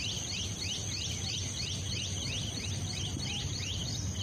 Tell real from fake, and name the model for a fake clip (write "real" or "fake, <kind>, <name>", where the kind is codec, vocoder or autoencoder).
real